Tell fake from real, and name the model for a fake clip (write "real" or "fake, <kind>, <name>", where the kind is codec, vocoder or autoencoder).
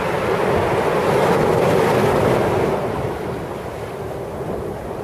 real